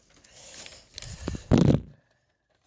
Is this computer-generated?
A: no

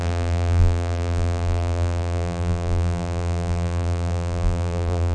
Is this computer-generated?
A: yes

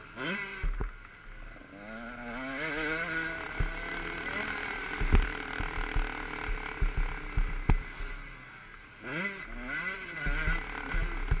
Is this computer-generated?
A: no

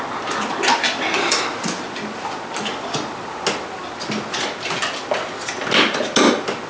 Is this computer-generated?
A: no